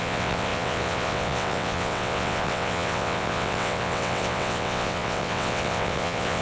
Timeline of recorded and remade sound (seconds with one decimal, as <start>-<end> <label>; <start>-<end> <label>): 0.0-6.4 remade